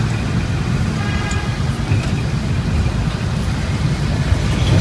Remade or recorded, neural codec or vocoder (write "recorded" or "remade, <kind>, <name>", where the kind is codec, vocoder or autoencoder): recorded